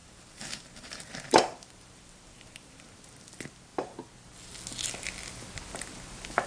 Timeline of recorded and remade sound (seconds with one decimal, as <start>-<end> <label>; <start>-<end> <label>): 0.0-3.2 remade; 3.2-6.5 recorded